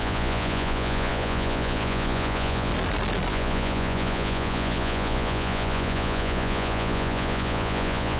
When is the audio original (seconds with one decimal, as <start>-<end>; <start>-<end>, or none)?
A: 2.7-3.3

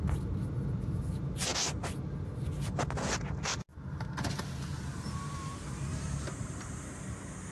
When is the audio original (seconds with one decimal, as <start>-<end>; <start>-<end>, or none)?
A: 0.0-5.9

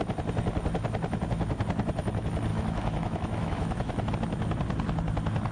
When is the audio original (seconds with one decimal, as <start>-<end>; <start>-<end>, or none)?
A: 0.0-2.5; 4.1-5.5

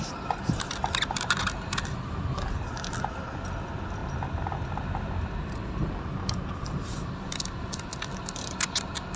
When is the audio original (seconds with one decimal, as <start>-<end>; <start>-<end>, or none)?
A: 0.0-9.2

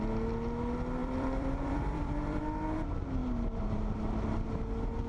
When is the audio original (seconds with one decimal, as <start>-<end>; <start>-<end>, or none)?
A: 0.0-1.0; 2.4-5.1

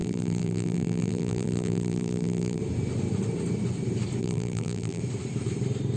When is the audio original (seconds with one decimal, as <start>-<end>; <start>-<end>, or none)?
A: 2.6-4.2; 5.0-6.0

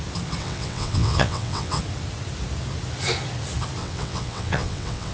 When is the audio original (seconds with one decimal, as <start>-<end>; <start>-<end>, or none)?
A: 0.0-0.4; 1.8-3.8